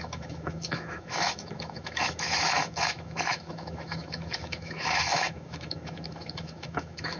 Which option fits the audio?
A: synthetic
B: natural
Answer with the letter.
A